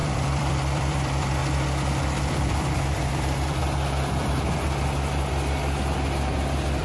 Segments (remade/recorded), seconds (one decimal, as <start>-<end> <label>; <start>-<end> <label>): 0.0-1.4 remade; 1.4-2.2 recorded; 2.2-3.6 remade; 3.6-6.8 recorded